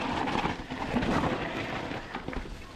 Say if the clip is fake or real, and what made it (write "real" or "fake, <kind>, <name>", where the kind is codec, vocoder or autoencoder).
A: real